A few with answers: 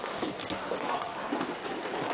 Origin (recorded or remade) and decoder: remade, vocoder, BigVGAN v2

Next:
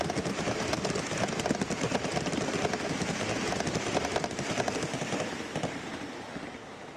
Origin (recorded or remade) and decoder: recorded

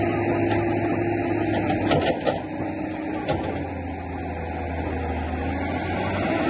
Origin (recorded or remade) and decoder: recorded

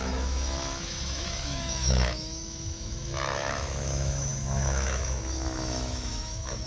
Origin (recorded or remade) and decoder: remade, autoencoder, DAC-VAE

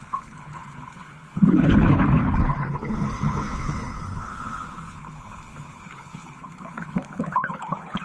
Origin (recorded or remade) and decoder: remade, codec, HILCodec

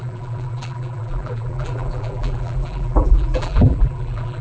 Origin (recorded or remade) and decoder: remade, vocoder, BigVGAN v2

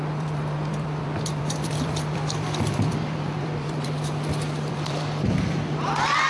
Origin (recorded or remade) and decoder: remade, vocoder, BigVGAN v2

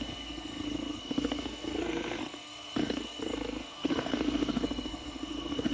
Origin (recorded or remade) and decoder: remade, codec, SNAC